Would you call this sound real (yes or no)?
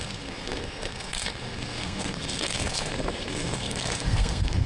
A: no